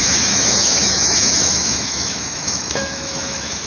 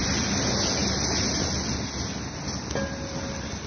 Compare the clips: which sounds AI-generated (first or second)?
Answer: first